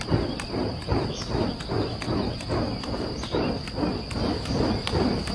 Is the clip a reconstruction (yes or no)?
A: no